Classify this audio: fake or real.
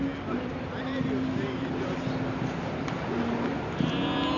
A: real